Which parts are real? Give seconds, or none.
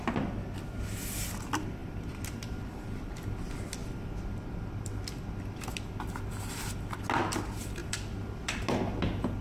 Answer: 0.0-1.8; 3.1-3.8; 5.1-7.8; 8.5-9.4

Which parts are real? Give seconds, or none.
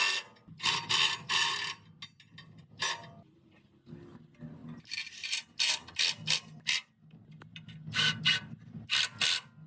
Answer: 0.0-9.7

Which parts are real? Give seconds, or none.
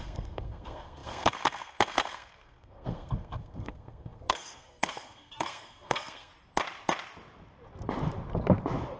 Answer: 6.3-9.0